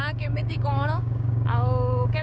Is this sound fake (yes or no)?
yes